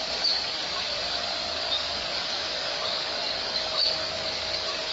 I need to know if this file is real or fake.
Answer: fake